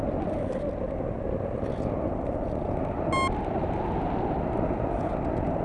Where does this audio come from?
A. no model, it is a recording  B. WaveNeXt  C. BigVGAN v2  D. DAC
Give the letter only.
A